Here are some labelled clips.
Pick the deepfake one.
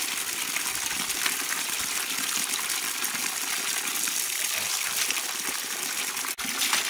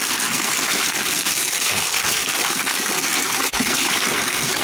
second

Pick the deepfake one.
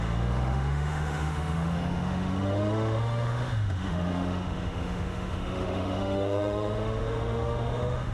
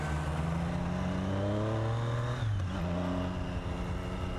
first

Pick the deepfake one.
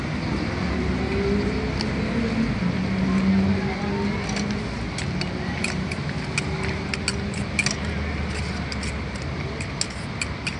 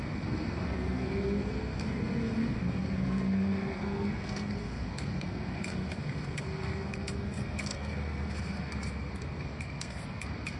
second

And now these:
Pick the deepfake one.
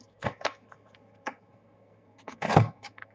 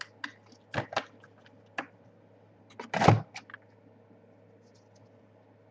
first